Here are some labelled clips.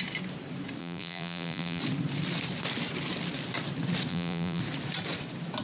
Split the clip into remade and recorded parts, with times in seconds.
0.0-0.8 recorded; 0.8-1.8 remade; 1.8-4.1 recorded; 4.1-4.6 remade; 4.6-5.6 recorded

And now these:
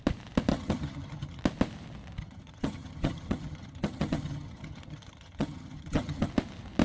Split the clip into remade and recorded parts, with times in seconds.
0.0-0.5 recorded; 0.5-1.4 remade; 1.4-2.2 recorded; 2.2-6.3 remade; 6.3-6.8 recorded

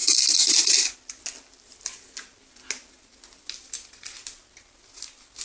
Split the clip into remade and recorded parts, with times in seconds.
0.0-5.4 recorded

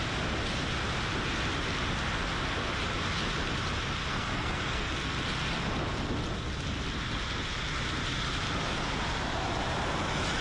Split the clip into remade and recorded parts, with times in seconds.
0.0-4.1 recorded; 4.1-4.9 remade; 4.9-10.4 recorded

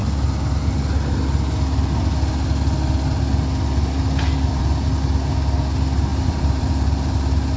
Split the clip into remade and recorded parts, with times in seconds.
0.0-6.1 recorded; 6.1-6.7 remade; 6.7-7.6 recorded

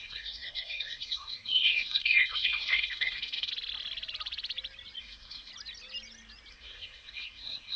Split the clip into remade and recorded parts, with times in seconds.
0.0-3.5 remade; 3.5-5.0 recorded; 5.0-5.5 remade; 5.5-6.5 recorded; 6.5-7.8 remade